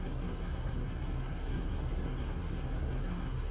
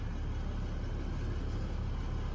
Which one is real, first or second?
second